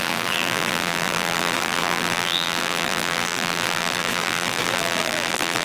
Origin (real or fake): fake